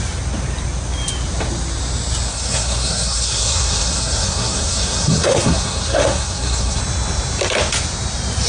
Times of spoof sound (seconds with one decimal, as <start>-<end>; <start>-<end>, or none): 2.3-6.8